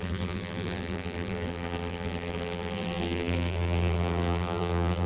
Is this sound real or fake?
fake